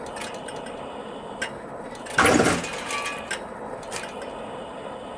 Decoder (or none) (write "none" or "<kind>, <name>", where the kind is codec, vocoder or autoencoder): none